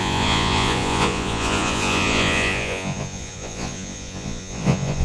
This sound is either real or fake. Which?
fake